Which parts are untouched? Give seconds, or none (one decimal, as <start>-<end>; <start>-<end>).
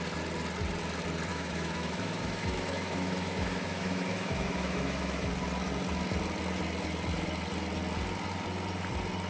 0.0-1.3; 5.3-9.3